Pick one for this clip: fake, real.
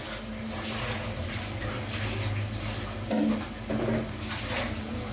real